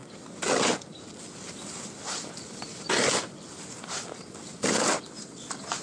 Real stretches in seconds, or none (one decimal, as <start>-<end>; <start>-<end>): 0.0-5.8